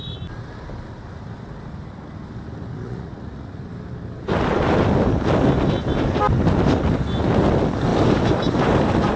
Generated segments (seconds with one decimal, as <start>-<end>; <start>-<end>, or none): 2.8-3.6